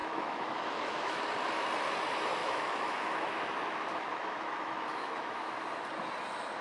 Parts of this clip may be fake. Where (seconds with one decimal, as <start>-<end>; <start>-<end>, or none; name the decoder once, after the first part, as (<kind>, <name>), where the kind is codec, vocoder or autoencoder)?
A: 0.0-1.2 (autoencoder, DAC-VAE); 2.4-5.5